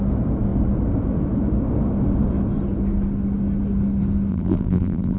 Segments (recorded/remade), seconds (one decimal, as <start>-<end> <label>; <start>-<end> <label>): 0.0-4.3 recorded; 4.3-5.2 remade